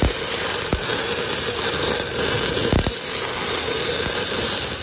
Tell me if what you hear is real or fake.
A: real